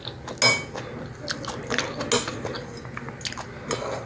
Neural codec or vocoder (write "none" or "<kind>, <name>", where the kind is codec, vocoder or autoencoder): none